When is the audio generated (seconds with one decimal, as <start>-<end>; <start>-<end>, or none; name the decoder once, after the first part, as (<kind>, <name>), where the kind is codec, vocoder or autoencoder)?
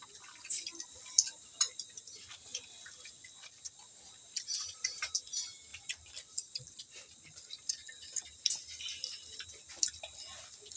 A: none